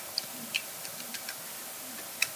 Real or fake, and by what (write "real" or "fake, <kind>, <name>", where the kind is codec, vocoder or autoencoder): real